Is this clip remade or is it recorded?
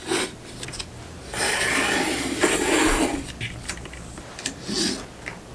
recorded